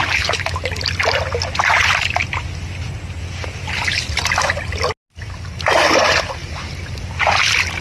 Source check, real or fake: real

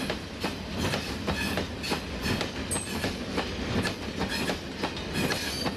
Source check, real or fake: real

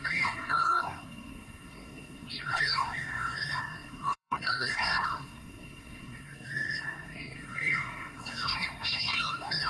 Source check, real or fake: fake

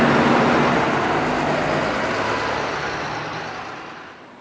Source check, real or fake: real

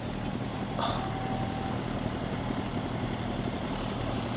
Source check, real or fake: real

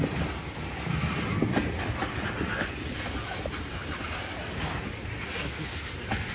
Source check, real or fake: real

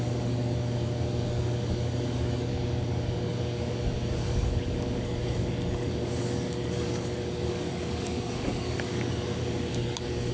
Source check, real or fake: fake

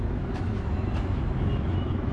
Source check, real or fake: fake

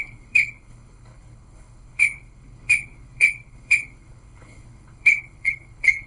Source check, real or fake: fake